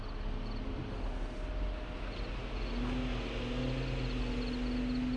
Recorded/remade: recorded